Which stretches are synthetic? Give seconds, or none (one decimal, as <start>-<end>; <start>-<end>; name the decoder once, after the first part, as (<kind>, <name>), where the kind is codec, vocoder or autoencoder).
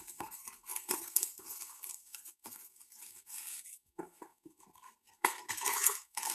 0.0-6.3 (codec, SNAC)